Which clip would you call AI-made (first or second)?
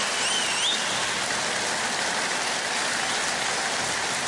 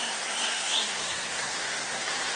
second